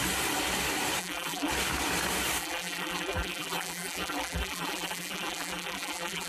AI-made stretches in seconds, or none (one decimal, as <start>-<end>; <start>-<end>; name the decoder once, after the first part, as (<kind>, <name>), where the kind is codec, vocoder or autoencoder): 1.0-1.5 (vocoder, BigVGAN v2); 2.4-6.3